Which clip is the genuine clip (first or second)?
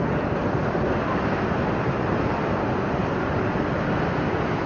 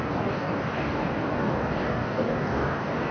first